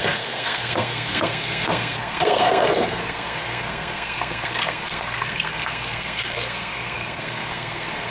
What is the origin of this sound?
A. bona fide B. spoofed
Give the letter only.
B